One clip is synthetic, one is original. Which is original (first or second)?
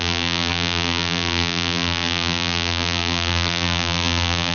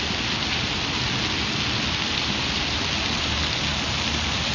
second